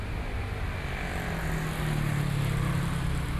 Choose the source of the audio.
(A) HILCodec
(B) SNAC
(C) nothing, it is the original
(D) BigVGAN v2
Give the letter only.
C